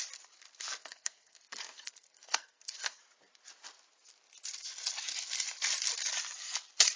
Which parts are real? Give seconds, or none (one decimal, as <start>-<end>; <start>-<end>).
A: 0.0-0.8; 3.0-7.0

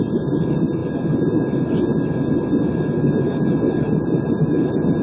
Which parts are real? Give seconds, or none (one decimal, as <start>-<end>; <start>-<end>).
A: 0.8-3.8

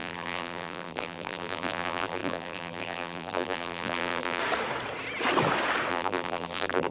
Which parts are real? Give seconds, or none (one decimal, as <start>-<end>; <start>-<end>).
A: 4.4-5.9

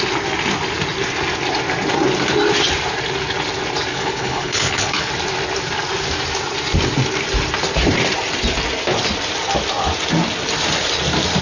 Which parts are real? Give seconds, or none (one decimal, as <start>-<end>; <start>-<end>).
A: 0.0-3.9; 5.1-11.4

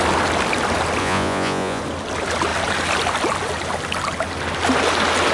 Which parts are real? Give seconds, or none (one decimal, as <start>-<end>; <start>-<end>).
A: 0.0-1.0; 1.8-5.3

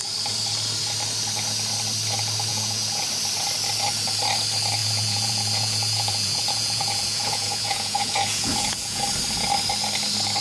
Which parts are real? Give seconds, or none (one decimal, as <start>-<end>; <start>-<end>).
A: 0.0-2.5; 3.0-4.8; 9.0-10.4

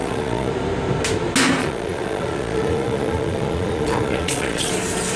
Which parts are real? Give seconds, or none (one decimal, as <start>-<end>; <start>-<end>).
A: 0.5-1.6; 4.7-5.2